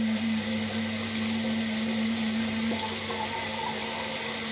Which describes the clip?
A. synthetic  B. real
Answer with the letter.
B